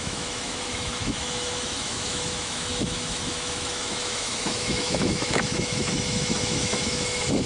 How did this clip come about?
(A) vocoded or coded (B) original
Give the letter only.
A